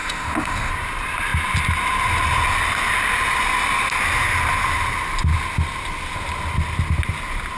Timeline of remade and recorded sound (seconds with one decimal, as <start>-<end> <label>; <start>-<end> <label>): 0.0-0.7 remade; 0.7-7.6 recorded